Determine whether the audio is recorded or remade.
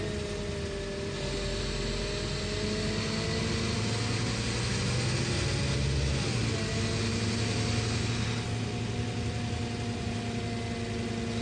recorded